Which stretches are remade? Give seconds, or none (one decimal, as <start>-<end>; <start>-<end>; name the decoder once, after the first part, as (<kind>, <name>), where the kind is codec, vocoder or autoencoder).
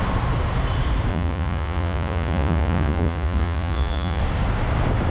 1.1-4.2 (vocoder, Vocos)